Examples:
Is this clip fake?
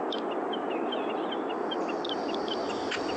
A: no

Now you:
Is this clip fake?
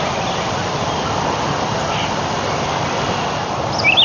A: no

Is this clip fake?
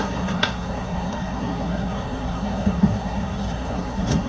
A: yes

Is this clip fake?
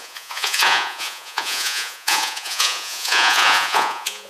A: yes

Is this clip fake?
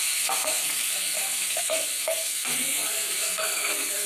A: yes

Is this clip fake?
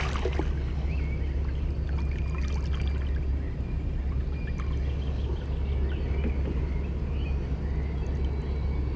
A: no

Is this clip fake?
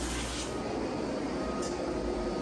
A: no